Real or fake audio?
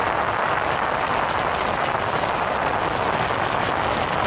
real